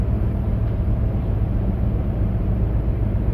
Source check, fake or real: fake